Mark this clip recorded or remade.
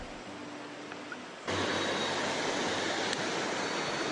recorded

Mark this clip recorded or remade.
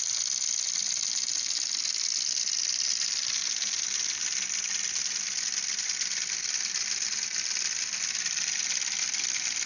recorded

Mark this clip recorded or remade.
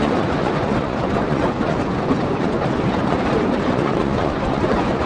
remade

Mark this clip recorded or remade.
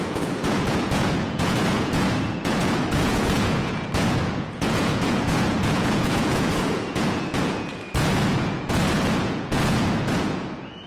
remade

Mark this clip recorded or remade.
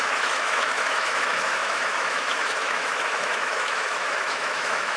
remade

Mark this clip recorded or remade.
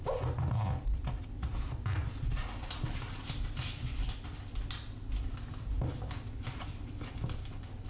recorded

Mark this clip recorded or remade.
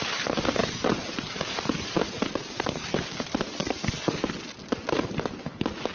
recorded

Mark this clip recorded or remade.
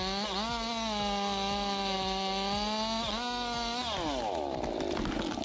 recorded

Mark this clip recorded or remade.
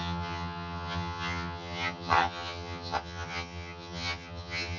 remade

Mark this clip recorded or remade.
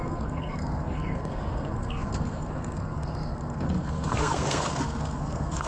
remade